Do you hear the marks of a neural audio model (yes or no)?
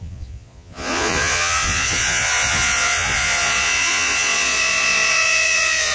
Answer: yes